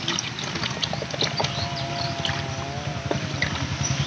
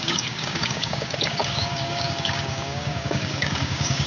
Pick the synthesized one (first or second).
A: second